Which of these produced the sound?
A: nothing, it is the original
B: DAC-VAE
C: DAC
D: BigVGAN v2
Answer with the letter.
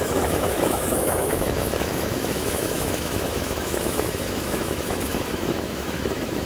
B